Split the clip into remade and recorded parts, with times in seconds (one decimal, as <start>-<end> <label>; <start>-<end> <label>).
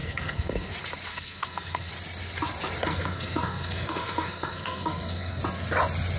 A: 0.0-0.7 remade; 0.7-1.1 recorded; 1.1-1.9 remade; 1.9-2.8 recorded; 2.8-5.4 remade; 5.4-6.2 recorded